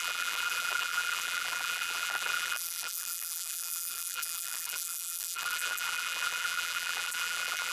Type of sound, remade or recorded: remade